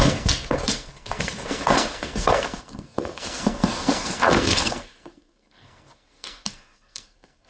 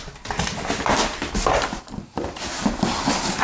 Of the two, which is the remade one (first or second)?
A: first